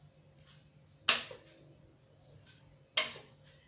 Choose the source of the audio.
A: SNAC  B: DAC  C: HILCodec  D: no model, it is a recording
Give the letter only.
D